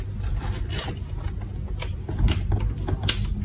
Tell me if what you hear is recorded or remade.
recorded